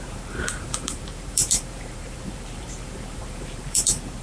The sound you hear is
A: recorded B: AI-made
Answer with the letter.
B